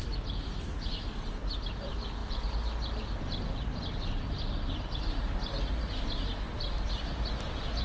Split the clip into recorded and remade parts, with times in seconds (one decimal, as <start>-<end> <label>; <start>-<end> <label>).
0.0-7.8 recorded